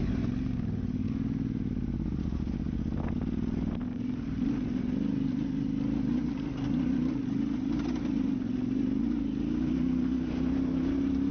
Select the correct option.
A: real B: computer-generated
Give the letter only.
A